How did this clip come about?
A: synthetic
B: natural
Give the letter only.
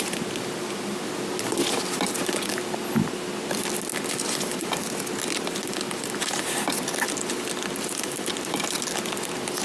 B